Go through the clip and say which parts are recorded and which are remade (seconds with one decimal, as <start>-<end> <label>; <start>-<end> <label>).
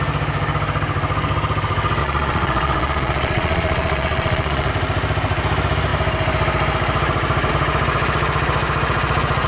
0.0-2.0 recorded; 2.0-4.7 remade; 4.7-9.5 recorded